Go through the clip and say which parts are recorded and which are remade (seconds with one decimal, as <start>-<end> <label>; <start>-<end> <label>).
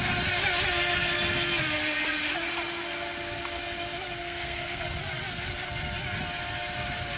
0.0-4.2 recorded; 4.2-4.8 remade; 4.8-7.2 recorded